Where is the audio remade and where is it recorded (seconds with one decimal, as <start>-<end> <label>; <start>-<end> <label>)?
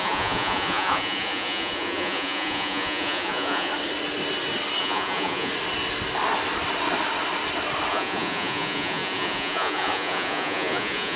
0.0-3.7 remade; 3.7-4.8 recorded; 4.8-5.5 remade; 5.5-7.9 recorded; 7.9-11.2 remade